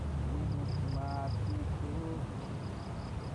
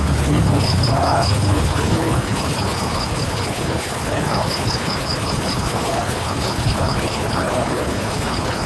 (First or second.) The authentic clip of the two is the first